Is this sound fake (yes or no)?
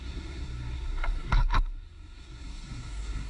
yes